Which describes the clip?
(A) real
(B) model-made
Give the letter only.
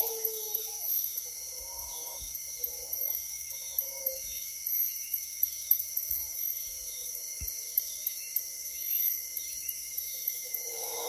B